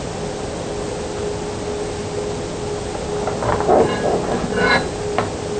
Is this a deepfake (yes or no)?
no